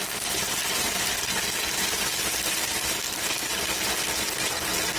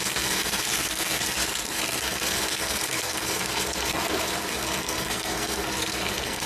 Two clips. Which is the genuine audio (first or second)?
first